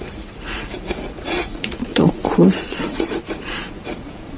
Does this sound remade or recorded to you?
remade